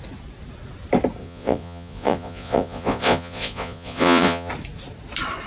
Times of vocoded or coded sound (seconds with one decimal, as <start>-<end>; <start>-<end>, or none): 1.2-4.5